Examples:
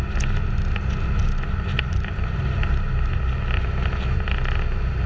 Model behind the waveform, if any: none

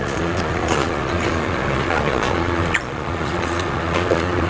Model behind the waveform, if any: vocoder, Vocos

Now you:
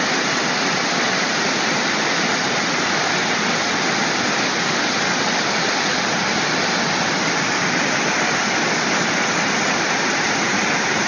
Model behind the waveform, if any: none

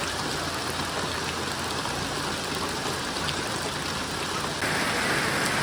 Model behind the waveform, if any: none